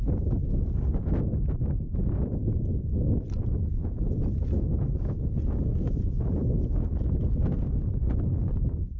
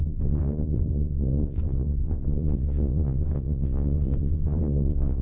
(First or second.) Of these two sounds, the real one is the first